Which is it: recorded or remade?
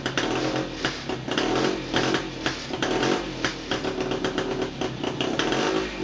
recorded